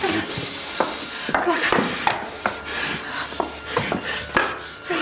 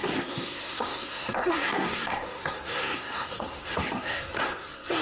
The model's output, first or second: second